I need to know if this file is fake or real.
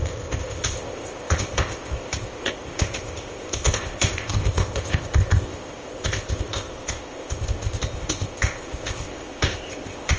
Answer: fake